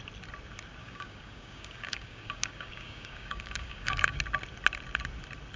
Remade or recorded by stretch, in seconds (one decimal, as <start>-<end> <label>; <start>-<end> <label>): 0.0-0.8 recorded; 0.8-4.2 remade; 4.2-5.6 recorded